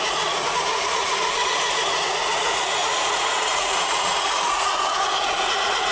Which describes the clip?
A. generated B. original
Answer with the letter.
A